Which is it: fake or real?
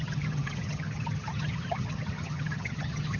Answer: fake